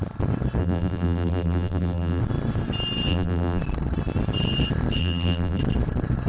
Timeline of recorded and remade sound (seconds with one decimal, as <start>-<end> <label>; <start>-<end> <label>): 0.0-0.6 recorded; 0.6-2.2 remade; 2.2-3.1 recorded; 3.1-3.6 remade; 3.6-5.0 recorded; 5.0-5.6 remade; 5.6-6.3 recorded